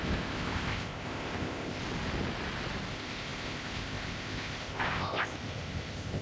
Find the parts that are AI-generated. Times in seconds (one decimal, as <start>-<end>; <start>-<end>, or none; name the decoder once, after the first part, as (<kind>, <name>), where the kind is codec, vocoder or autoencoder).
0.0-1.8 (codec, ZipCodec); 2.9-6.2